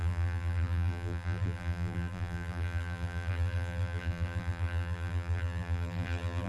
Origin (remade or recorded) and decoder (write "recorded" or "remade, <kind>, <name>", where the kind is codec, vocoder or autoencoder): remade, vocoder, BigVGAN v2